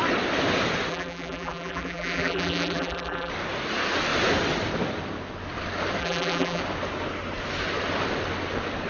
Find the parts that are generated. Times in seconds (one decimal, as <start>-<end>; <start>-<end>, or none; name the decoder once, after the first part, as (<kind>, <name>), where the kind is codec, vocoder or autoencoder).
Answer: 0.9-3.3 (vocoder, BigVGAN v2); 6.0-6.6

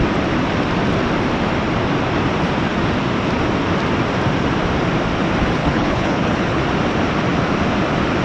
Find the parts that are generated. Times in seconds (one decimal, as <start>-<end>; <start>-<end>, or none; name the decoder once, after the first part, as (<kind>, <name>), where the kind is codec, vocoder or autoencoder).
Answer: 5.6-6.6 (codec, HILCodec)

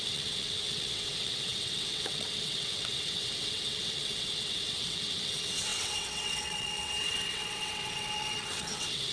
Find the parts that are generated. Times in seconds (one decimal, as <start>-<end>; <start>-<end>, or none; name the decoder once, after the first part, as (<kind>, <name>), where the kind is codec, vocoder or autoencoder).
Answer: 0.0-9.1 (vocoder, WaveNeXt)

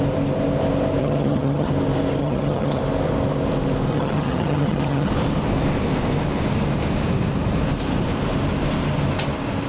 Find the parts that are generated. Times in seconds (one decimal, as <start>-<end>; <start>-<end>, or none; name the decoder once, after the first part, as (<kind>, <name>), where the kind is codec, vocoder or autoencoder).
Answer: 1.0-1.7 (vocoder, HiFi-GAN); 2.2-2.8; 3.9-5.1

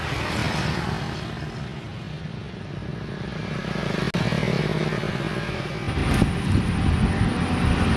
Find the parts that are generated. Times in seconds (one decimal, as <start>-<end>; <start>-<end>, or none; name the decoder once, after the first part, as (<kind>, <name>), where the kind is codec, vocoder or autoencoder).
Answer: none

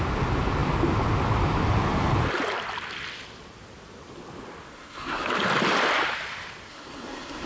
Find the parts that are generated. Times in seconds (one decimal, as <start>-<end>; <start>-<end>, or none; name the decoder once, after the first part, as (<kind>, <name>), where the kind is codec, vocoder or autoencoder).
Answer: 4.7-5.3 (codec, SNAC); 6.7-7.5

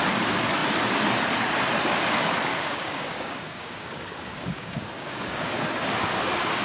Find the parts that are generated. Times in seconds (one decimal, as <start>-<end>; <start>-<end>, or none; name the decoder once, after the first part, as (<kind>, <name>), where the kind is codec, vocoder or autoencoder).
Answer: 2.5-6.6 (codec, DAC)